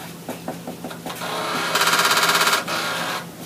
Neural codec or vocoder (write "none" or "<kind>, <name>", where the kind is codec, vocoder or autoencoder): none